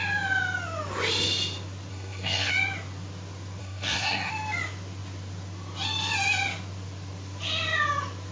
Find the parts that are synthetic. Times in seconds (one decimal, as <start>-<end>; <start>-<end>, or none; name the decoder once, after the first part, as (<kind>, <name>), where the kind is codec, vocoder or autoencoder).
1.9-2.5 (codec, SNAC); 3.6-4.3